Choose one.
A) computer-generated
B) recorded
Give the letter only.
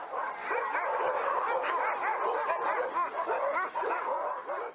B